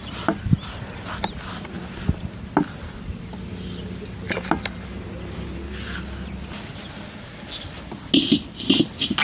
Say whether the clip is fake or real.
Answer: real